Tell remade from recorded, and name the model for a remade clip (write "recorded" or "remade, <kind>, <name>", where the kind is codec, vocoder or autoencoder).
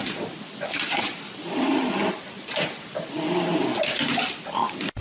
recorded